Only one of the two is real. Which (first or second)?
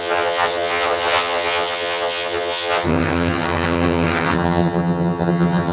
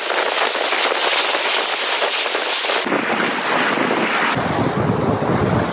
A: second